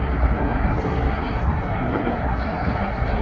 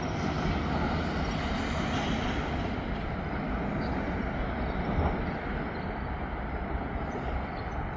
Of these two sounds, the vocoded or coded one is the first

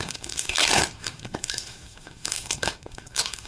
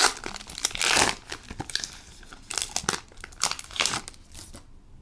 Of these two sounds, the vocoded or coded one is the first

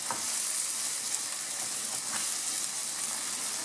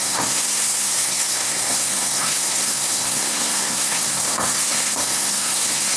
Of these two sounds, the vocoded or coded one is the second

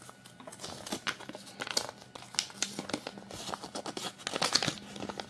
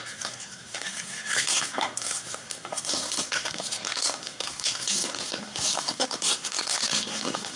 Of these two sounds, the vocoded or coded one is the second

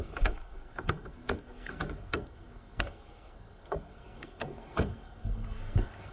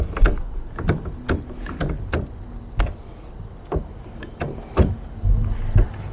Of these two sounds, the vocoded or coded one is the first